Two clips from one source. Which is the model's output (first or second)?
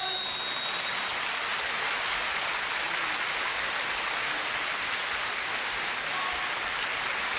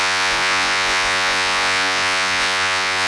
second